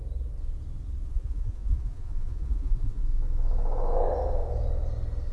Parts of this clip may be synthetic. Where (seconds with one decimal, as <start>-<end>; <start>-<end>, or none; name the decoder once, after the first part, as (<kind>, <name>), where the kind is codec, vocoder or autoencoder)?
1.0-3.0 (vocoder, Vocos)